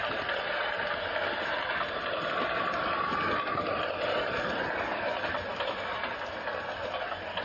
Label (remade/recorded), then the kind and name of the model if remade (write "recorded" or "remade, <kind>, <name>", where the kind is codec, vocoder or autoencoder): recorded